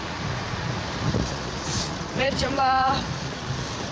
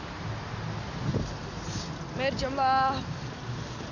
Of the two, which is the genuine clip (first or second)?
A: second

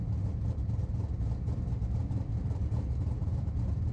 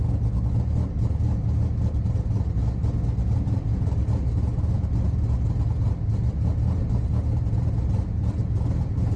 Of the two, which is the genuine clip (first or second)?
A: second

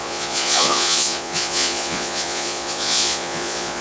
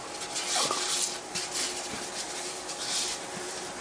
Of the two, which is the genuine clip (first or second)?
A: second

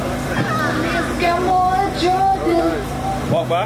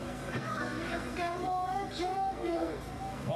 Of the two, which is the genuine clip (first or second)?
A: first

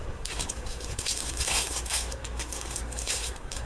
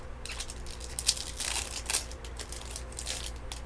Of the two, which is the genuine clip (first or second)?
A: second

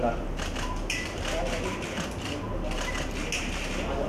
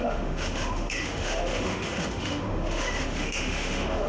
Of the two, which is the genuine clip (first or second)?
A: first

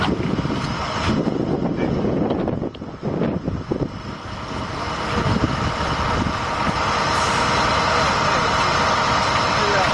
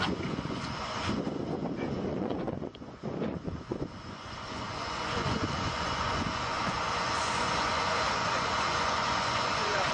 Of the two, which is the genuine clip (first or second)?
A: first